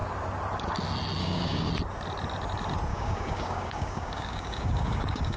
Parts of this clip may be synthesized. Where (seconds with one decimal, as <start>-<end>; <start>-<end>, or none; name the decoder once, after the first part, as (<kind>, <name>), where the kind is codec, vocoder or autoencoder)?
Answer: 1.2-1.7 (codec, DAC); 2.9-5.4